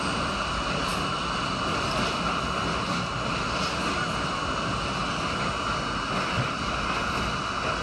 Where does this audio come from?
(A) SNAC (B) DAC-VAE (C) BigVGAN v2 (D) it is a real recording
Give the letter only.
D